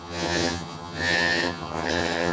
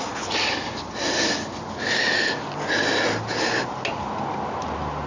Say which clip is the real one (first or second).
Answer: second